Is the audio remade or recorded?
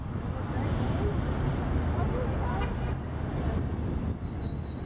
recorded